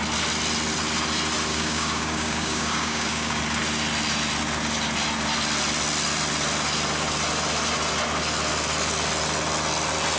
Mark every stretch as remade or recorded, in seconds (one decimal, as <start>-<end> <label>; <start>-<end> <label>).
0.0-1.5 recorded; 1.5-3.4 remade; 3.4-10.2 recorded